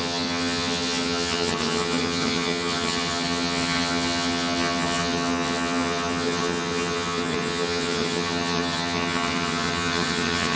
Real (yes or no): no